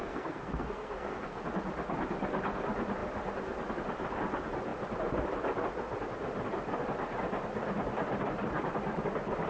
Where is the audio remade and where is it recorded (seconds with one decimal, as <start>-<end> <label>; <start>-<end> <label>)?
0.0-1.4 remade; 1.4-9.5 recorded